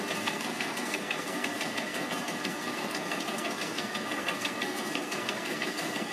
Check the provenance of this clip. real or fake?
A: fake